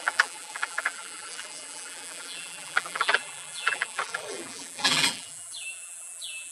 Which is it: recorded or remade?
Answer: remade